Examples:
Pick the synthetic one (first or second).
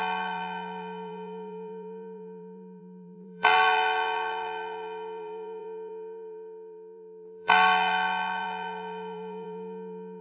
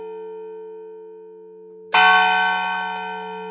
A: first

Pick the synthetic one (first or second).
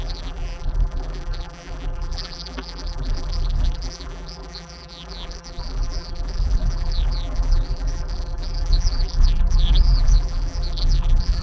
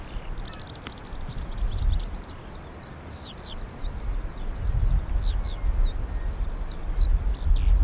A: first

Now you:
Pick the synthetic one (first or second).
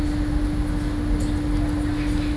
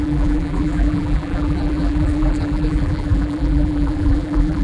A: second